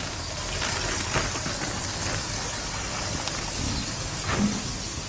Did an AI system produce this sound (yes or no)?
no